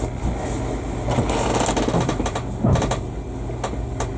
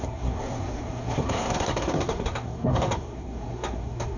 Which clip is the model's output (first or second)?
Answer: second